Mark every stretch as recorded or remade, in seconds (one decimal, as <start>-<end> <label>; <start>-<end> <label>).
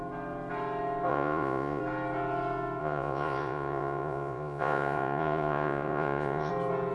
0.0-1.1 recorded; 1.1-1.8 remade; 1.8-2.8 recorded; 2.8-6.5 remade; 6.5-6.9 recorded